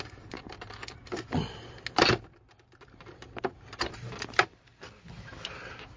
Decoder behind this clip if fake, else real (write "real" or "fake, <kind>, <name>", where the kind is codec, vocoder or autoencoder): real